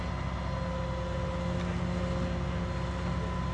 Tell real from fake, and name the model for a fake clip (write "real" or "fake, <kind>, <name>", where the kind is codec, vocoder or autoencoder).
real